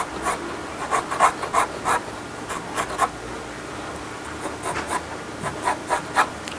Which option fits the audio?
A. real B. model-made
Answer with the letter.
A